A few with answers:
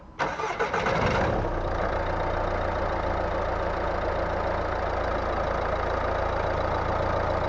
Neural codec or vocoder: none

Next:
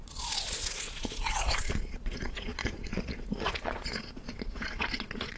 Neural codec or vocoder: vocoder, Vocos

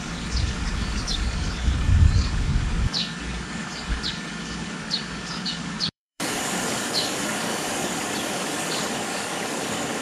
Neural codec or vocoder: codec, DAC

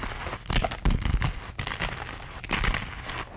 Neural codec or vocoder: none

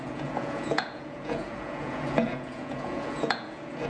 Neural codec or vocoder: vocoder, Vocos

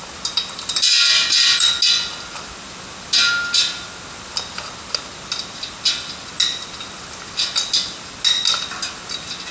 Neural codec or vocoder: none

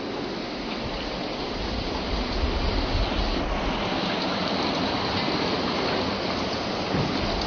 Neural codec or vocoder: none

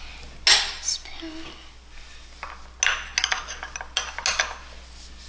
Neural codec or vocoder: none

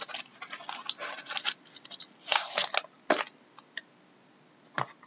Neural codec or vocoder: none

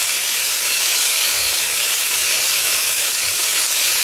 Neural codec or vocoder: codec, DAC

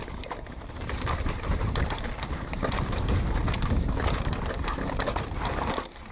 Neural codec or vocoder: vocoder, BigVGAN v2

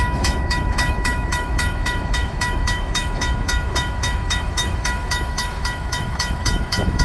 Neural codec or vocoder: autoencoder, DAC-VAE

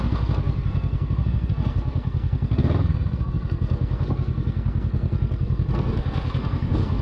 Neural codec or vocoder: codec, SNAC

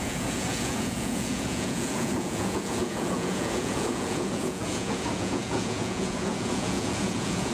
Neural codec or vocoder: vocoder, Vocos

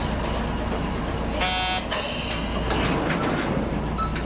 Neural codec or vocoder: none